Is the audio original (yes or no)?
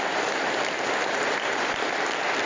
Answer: no